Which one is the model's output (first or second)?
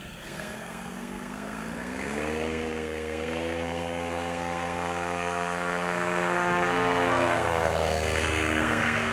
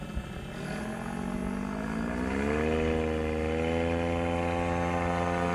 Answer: first